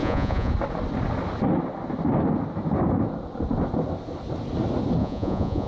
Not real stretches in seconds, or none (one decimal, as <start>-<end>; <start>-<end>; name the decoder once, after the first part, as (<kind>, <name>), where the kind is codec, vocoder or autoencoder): 0.0-0.5 (vocoder, Vocos); 5.0-5.7